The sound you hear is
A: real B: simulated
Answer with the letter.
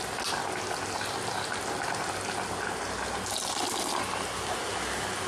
A